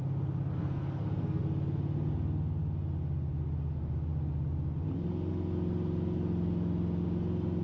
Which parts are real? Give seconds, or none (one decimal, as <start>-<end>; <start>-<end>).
0.0-0.6; 1.4-7.6